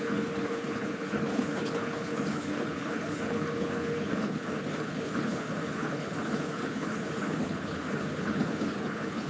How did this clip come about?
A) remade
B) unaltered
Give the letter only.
A